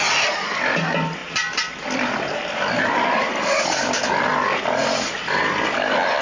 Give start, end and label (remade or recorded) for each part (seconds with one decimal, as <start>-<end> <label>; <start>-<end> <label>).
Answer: 0.0-6.2 recorded

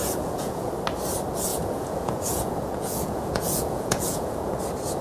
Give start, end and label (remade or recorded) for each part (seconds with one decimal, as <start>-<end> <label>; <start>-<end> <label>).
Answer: 0.0-0.7 remade; 0.7-1.5 recorded; 1.5-4.5 remade; 4.5-5.0 recorded

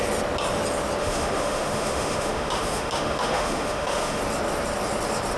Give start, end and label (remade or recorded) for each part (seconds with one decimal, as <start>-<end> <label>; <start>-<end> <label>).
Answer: 0.0-1.0 recorded; 1.0-4.2 remade; 4.2-5.4 recorded

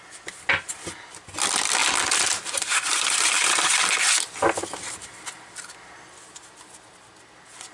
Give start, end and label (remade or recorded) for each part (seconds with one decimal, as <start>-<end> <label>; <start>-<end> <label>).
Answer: 0.0-7.7 recorded

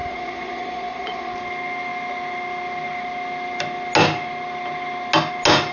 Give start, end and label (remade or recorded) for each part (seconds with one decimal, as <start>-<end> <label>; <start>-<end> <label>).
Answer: 0.0-1.3 remade; 1.3-5.7 recorded

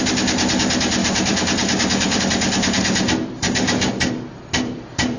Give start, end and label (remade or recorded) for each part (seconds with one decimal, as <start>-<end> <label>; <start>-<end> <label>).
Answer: 0.0-1.0 recorded; 1.0-2.2 remade; 2.2-5.2 recorded

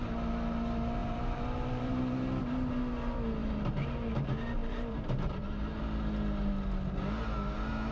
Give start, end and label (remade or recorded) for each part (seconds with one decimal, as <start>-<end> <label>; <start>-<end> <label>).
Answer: 0.0-1.0 recorded; 1.0-2.4 remade; 2.4-3.4 recorded; 3.4-4.1 remade; 4.1-4.6 recorded; 4.6-5.8 remade; 5.8-7.9 recorded

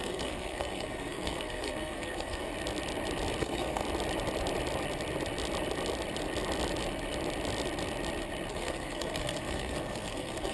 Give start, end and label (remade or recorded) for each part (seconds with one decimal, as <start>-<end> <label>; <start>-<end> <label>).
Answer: 0.0-2.5 remade; 2.5-3.4 recorded; 3.4-3.8 remade; 3.8-8.5 recorded; 8.5-10.5 remade